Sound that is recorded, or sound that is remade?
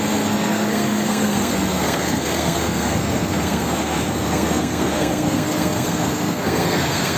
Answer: remade